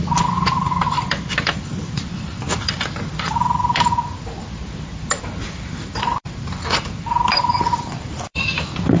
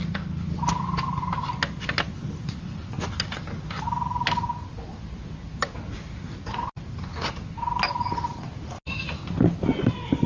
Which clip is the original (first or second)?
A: second